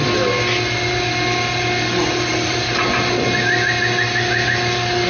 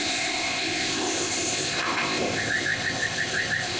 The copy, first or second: second